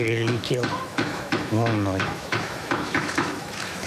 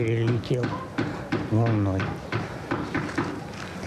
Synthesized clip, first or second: first